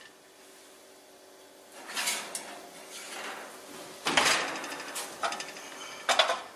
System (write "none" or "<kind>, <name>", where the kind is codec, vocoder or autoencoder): none